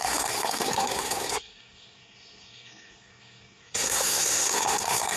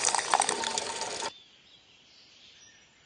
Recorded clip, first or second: second